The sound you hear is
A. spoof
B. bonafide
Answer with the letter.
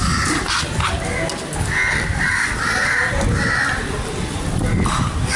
B